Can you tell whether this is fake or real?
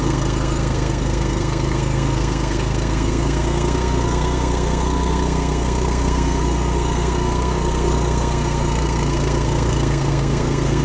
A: fake